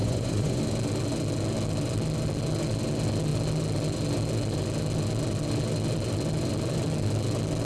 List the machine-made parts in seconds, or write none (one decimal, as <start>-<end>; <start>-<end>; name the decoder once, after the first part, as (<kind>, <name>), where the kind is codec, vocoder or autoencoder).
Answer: 0.0-0.6 (vocoder, Vocos)